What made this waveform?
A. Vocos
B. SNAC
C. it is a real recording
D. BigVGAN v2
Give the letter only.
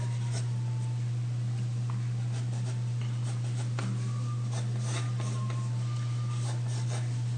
D